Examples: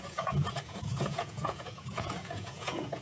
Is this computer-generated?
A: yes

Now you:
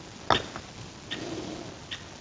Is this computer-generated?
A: no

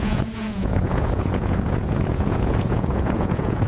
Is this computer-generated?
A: yes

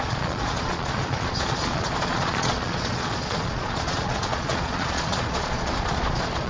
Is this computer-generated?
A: yes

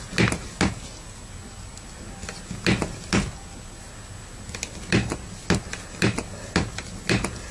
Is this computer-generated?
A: no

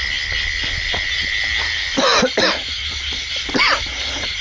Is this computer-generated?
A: no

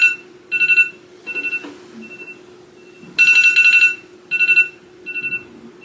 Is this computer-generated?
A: no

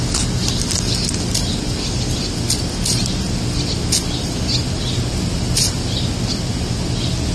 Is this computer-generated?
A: no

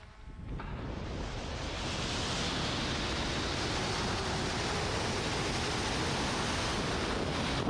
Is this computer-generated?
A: no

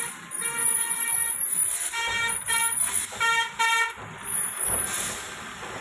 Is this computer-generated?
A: no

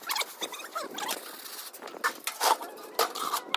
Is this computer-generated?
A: no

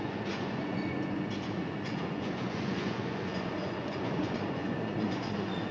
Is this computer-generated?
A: yes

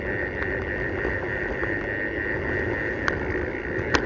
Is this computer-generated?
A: no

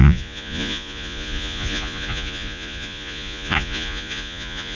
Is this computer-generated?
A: yes